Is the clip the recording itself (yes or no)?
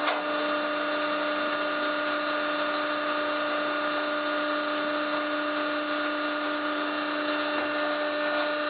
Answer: yes